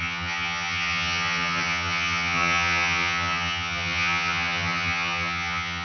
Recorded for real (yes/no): no